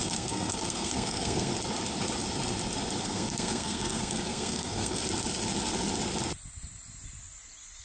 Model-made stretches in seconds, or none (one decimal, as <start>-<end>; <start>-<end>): 0.0-1.5; 3.0-5.0